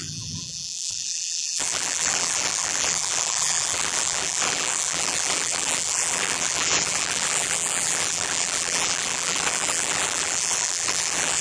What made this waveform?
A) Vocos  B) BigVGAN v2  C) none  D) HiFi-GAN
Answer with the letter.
B